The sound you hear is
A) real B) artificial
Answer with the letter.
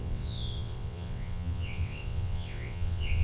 B